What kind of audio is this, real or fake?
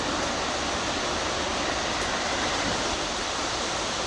real